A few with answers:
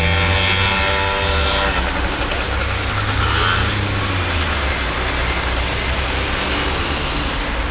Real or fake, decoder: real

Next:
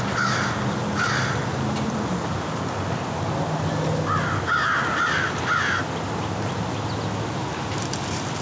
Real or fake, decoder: real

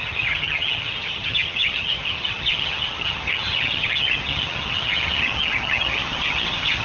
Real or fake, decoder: fake, vocoder, HiFi-GAN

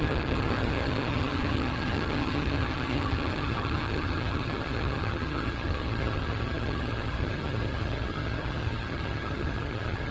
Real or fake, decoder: fake, vocoder, HiFi-GAN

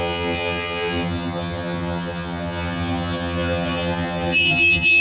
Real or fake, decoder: fake, vocoder, HiFi-GAN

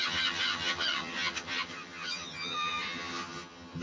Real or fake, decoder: fake, vocoder, HiFi-GAN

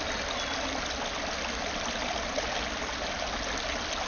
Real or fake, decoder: real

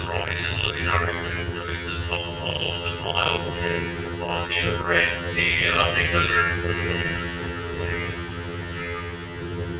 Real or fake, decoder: fake, vocoder, HiFi-GAN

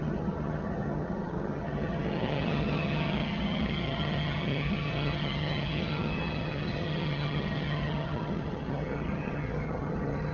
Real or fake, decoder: fake, vocoder, HiFi-GAN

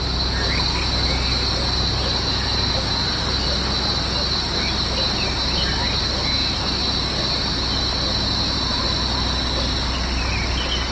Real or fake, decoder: real